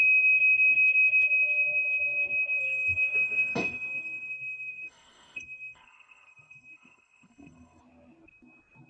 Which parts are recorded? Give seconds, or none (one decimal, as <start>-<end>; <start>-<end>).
0.0-2.6; 7.8-8.9